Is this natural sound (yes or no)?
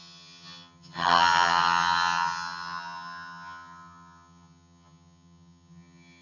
no